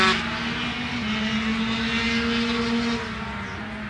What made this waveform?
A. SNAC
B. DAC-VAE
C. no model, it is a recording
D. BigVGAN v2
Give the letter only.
C